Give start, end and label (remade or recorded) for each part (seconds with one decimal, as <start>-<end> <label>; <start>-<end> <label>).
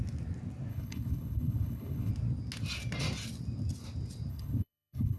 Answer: 0.0-0.7 recorded; 0.7-2.1 remade; 2.1-4.3 recorded; 4.3-5.2 remade